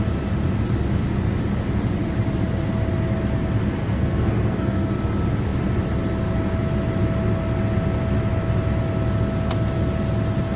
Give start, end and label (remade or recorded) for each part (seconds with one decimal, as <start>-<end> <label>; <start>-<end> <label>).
0.0-3.8 recorded; 3.8-4.9 remade; 4.9-10.6 recorded